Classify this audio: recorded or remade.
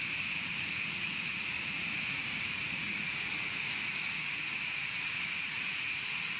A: remade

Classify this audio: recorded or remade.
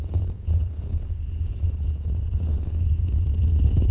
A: remade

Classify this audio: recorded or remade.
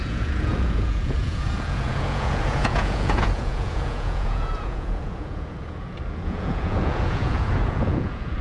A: remade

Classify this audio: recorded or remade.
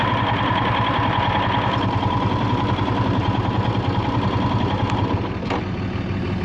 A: recorded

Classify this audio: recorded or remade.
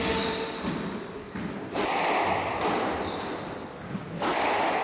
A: recorded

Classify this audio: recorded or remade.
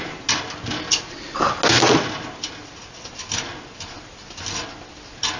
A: recorded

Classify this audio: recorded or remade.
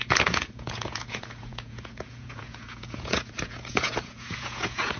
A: remade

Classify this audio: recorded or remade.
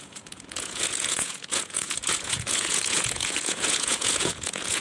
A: remade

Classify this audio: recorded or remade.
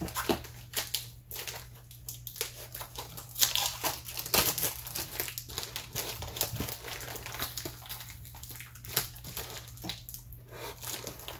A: recorded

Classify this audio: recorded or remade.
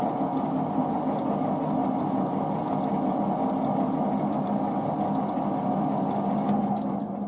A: recorded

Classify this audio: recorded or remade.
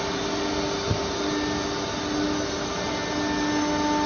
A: recorded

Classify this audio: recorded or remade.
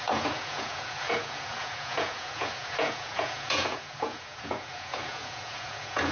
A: remade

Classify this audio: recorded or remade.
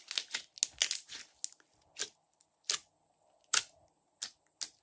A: recorded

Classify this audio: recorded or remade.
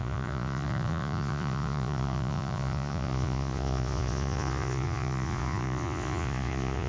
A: remade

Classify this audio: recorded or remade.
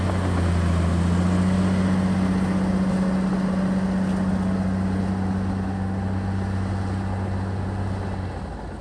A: recorded